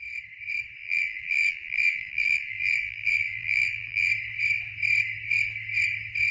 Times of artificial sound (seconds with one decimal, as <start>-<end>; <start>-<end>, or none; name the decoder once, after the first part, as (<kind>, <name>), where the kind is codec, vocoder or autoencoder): 0.8-4.1 (vocoder, BigVGAN v2)